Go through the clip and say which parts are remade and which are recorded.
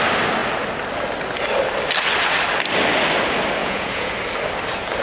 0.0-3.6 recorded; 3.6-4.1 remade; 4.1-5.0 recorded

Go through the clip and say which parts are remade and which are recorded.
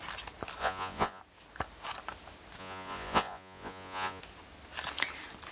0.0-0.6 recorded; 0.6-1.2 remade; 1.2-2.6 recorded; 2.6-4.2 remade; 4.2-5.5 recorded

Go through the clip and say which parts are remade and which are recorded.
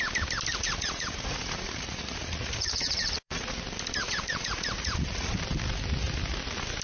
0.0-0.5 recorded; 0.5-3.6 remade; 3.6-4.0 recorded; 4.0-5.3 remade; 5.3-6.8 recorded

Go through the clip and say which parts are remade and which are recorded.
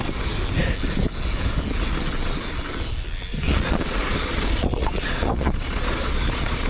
0.0-3.3 recorded; 3.3-6.7 remade